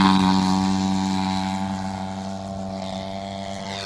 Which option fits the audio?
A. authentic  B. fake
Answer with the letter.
B